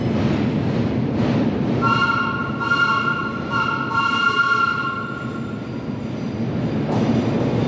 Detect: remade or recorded recorded